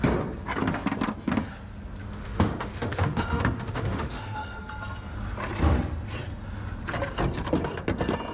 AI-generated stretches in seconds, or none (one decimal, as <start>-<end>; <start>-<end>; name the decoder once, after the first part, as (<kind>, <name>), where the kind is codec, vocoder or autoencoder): 2.0-4.6 (autoencoder, DAC-VAE)